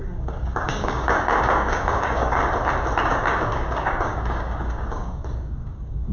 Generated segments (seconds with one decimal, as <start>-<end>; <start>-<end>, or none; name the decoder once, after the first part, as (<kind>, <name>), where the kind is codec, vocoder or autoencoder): 0.0-2.4 (codec, DAC); 3.0-6.1